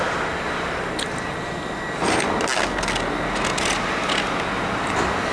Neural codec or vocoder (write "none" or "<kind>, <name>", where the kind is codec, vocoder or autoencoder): none